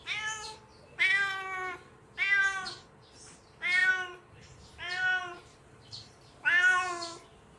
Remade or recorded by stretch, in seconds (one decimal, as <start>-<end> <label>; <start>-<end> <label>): 0.0-3.8 recorded; 3.8-6.3 remade; 6.3-7.6 recorded